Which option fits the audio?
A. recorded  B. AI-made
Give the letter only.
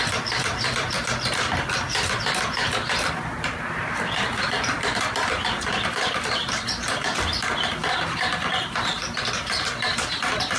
B